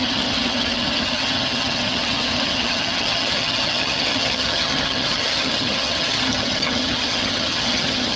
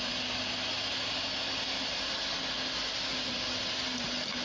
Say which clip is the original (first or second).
second